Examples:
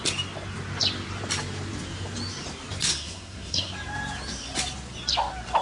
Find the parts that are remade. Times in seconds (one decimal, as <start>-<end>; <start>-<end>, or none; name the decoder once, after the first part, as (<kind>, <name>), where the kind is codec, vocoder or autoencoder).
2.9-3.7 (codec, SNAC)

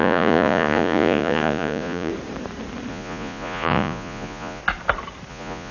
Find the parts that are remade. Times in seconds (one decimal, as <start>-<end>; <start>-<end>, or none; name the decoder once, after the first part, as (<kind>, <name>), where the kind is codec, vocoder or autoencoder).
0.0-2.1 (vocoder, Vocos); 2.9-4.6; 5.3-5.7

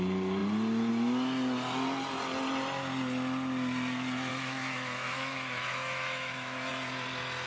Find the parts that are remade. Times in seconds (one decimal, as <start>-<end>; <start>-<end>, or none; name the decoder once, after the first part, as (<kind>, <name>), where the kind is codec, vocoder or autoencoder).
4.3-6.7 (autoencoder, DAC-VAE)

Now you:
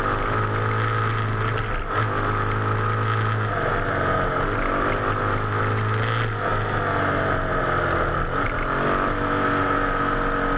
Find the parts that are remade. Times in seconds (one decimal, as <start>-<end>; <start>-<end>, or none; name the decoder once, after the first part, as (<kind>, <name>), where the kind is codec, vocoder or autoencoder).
none

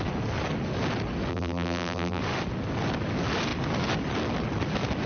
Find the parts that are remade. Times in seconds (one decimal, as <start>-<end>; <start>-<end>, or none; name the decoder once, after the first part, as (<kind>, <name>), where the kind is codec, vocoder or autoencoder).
1.3-2.2 (vocoder, BigVGAN v2)